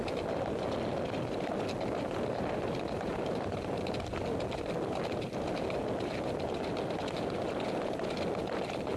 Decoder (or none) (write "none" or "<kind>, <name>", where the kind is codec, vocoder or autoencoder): none